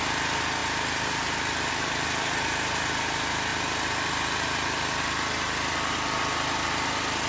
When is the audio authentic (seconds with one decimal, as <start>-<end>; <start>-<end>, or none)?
0.0-7.3